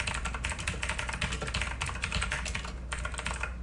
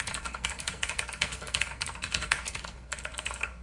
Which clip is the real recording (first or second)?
first